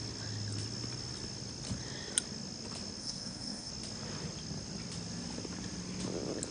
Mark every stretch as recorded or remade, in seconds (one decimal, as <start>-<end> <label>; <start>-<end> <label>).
0.0-3.0 recorded; 3.0-3.7 remade; 3.7-6.5 recorded